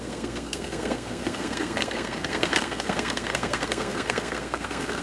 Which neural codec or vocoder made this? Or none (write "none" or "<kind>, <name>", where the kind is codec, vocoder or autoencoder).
codec, SNAC